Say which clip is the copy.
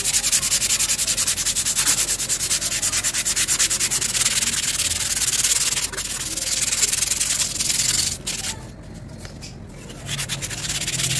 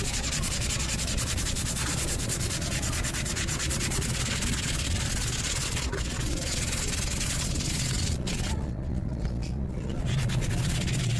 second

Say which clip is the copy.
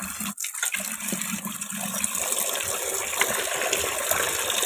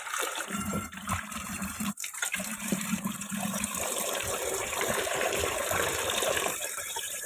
second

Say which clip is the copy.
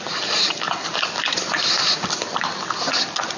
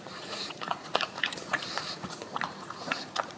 second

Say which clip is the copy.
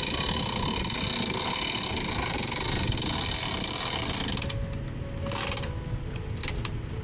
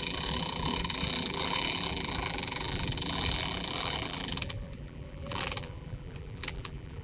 second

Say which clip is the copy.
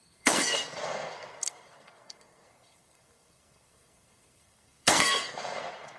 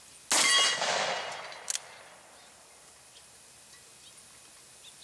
first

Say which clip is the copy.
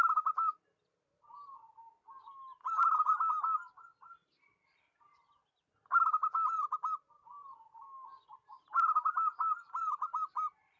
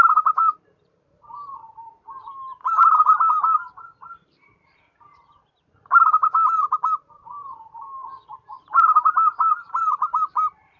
second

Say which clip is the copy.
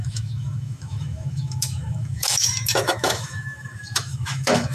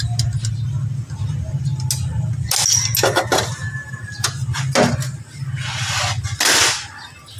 first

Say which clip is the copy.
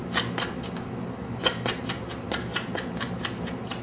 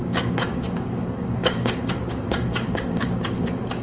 second